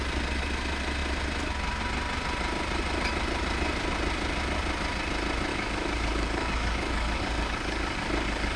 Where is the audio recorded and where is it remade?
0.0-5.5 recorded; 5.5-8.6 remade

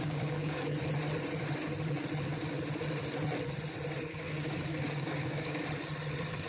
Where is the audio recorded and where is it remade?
0.0-0.7 remade; 0.7-4.1 recorded; 4.1-5.6 remade; 5.6-6.5 recorded